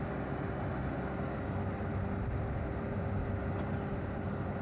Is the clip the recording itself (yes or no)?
yes